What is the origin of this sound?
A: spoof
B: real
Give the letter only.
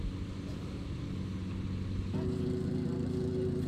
B